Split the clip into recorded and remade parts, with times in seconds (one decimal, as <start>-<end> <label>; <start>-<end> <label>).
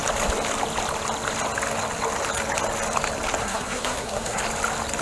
0.0-3.4 recorded; 3.4-4.4 remade; 4.4-5.0 recorded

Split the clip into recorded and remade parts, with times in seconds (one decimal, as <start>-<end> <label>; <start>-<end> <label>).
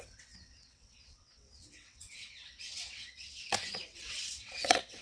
0.0-5.0 remade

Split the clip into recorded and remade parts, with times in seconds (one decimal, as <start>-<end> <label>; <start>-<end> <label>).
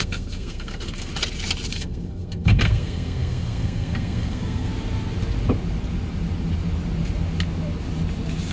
0.0-1.1 remade; 1.1-1.7 recorded; 1.7-4.7 remade; 4.7-8.5 recorded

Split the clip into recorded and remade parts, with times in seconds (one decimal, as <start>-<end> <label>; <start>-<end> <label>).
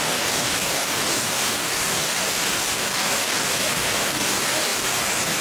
0.0-5.4 remade